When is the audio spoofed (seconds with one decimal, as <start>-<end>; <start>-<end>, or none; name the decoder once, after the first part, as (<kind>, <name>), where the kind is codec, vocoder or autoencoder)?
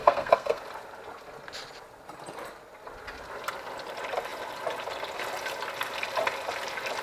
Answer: 0.0-0.6 (codec, SNAC)